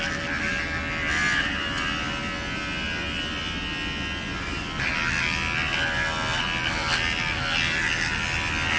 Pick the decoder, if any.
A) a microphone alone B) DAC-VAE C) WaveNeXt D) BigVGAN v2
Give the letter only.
A